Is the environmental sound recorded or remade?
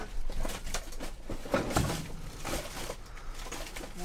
recorded